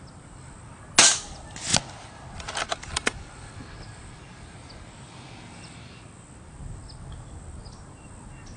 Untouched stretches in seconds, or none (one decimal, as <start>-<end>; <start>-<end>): 0.0-8.6